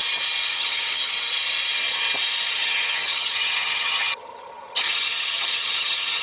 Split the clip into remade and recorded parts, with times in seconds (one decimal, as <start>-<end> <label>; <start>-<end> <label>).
0.0-0.5 recorded; 0.5-1.1 remade; 1.1-2.5 recorded; 2.5-6.2 remade